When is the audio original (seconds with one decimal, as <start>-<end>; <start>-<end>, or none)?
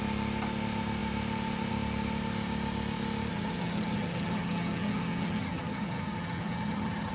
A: 0.0-3.3